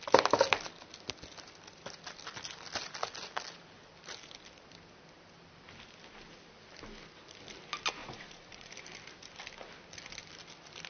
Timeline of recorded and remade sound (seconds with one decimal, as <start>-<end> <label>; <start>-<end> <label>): 0.0-8.0 recorded; 8.0-8.7 remade; 8.7-10.9 recorded